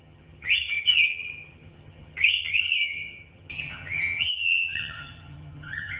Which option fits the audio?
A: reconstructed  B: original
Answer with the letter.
A